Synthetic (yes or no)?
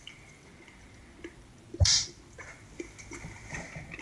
yes